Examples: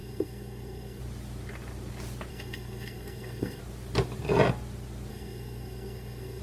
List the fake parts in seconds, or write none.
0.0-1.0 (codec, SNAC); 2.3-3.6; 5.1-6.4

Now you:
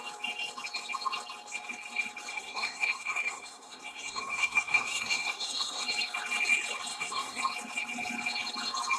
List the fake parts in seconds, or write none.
2.3-5.8 (codec, SNAC); 6.9-7.4

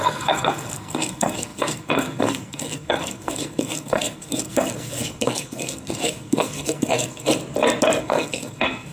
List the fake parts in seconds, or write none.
0.0-7.3 (codec, SNAC); 8.0-8.9